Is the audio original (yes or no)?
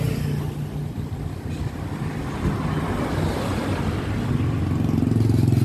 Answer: yes